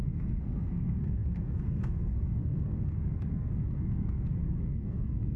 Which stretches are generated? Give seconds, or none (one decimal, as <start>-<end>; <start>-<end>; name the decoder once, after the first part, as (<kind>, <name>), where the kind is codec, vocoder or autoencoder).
0.0-5.4 (codec, SNAC)